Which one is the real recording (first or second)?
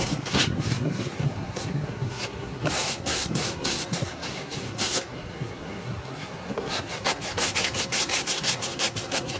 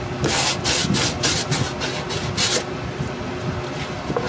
second